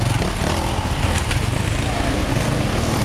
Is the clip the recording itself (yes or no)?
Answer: yes